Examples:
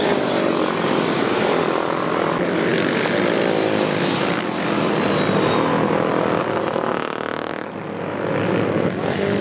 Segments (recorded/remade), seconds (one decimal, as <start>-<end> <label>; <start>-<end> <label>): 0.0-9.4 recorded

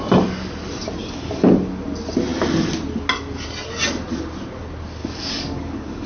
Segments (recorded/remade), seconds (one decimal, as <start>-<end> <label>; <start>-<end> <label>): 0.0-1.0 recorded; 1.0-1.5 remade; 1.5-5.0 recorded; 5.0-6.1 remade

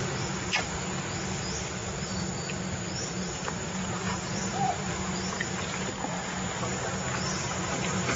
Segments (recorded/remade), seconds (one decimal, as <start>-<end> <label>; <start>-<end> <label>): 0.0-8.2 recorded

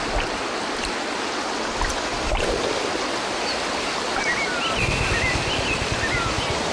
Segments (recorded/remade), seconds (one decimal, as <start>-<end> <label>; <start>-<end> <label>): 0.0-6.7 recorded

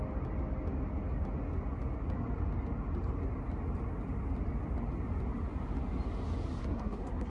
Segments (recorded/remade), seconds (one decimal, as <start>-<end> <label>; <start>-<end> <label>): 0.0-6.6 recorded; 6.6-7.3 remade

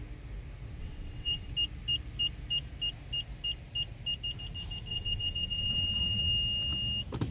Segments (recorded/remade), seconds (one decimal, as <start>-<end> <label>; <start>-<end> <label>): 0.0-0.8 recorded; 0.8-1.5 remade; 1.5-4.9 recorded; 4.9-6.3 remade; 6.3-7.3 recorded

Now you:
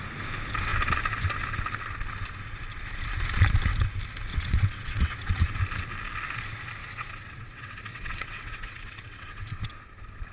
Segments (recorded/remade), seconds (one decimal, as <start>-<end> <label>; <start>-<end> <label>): 0.0-4.3 recorded; 4.3-5.4 remade; 5.4-6.8 recorded; 6.8-9.7 remade; 9.7-10.3 recorded

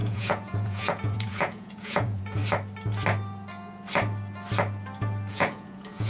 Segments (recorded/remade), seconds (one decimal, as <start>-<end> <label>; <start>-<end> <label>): 0.0-2.4 remade; 2.4-5.3 recorded; 5.3-6.1 remade